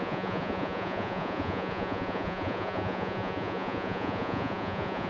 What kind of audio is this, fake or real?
fake